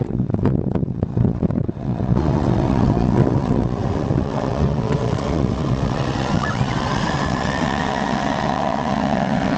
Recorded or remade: remade